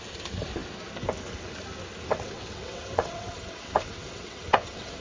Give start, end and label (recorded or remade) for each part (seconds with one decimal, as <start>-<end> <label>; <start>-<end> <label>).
0.0-2.1 recorded; 2.1-5.0 remade